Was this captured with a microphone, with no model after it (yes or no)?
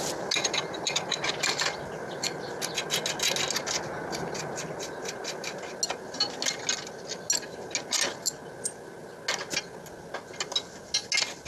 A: yes